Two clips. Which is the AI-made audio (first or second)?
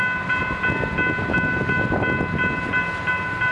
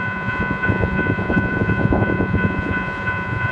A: second